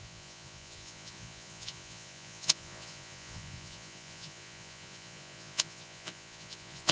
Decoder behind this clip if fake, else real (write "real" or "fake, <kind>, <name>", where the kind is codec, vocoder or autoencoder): fake, vocoder, Vocos